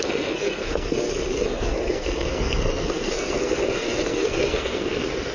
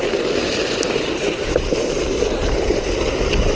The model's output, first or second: first